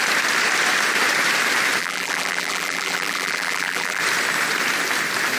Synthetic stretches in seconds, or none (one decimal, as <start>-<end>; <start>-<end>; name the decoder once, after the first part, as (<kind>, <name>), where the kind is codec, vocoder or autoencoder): 1.8-4.0 (vocoder, BigVGAN v2)